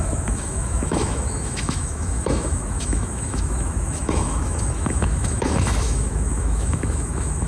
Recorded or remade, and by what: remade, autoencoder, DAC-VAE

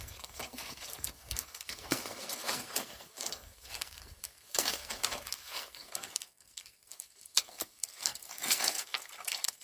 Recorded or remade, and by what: remade, codec, SNAC